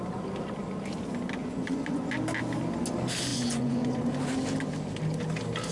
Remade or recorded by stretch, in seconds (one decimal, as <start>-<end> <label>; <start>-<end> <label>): 0.0-1.4 recorded; 1.4-2.1 remade; 2.1-3.3 recorded; 3.3-4.1 remade; 4.1-5.7 recorded